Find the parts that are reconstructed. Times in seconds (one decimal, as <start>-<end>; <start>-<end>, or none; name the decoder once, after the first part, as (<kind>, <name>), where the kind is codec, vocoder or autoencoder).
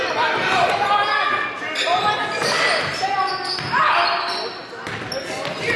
none